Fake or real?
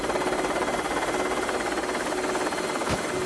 real